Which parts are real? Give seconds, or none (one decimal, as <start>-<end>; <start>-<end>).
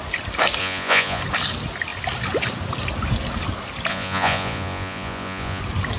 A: 0.0-0.6; 1.2-3.9; 5.6-6.0